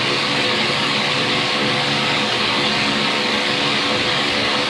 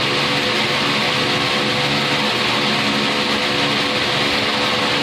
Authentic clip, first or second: second